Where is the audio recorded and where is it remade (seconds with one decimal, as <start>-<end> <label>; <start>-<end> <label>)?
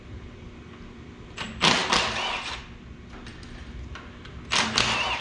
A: 0.0-5.2 recorded